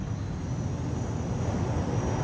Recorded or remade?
recorded